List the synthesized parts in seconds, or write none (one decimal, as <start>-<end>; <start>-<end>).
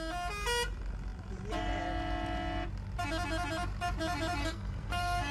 4.4-5.3